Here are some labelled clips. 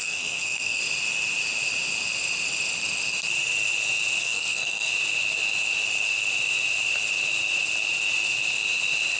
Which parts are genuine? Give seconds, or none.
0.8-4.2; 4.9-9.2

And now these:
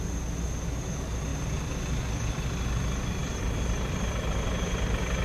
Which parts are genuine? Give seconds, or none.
0.0-3.2; 3.9-5.2

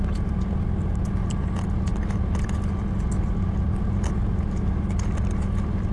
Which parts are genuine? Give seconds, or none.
0.0-5.9

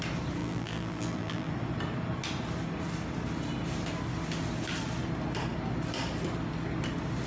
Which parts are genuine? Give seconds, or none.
0.0-0.4; 1.5-7.3

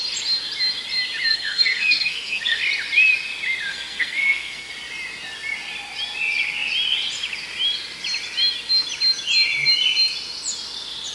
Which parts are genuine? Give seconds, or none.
0.0-1.3; 2.6-3.7; 4.7-11.1

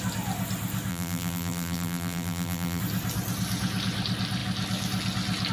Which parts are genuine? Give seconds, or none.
0.0-0.9; 2.8-5.5